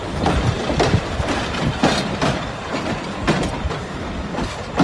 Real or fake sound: fake